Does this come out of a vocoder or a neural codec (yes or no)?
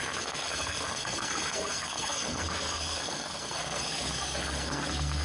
yes